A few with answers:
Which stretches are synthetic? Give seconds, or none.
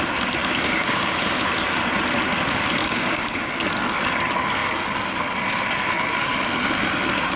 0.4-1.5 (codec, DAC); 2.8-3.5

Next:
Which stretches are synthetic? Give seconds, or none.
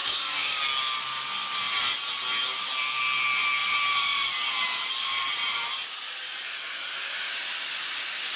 0.0-0.6 (codec, DAC)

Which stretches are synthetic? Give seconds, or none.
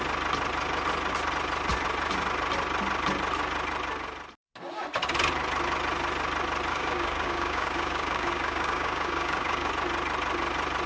6.7-9.7 (codec, DAC)